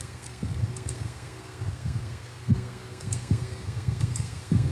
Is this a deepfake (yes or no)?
yes